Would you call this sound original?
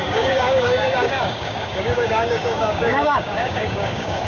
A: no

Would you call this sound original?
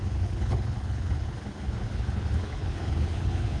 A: no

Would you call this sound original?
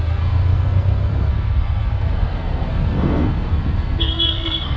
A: no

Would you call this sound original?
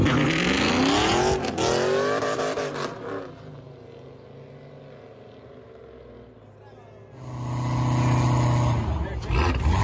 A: yes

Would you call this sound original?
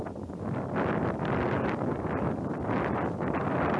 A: yes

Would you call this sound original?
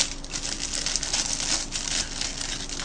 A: yes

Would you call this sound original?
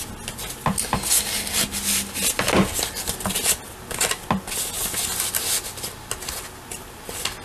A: yes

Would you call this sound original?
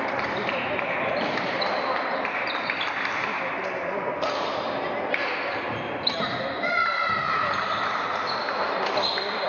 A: yes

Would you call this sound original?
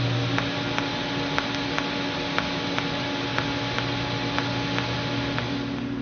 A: yes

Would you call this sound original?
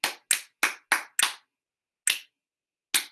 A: yes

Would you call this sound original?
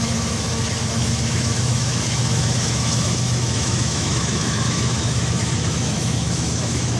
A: no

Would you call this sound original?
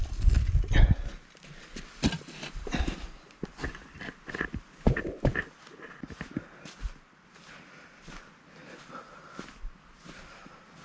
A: yes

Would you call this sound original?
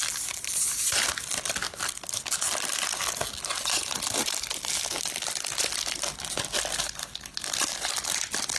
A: yes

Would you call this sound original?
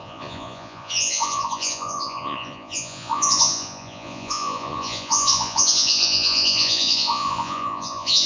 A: no